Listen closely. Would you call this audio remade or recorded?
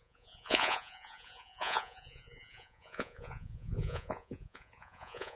remade